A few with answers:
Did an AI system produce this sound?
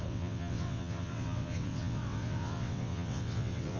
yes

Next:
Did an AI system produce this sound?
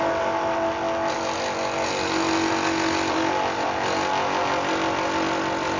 no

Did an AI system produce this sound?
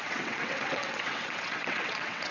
yes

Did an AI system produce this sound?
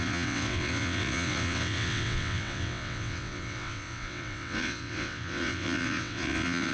yes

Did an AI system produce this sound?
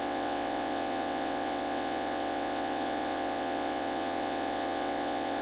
yes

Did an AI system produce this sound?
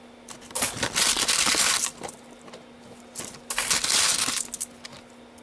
no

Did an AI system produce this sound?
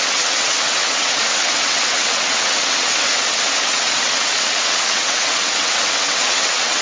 yes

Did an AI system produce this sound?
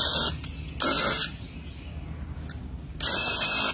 no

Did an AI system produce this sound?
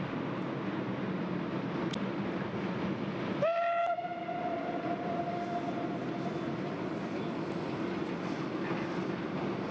no